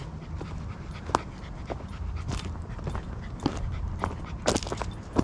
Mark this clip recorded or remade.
recorded